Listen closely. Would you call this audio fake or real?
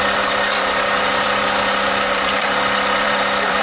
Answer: fake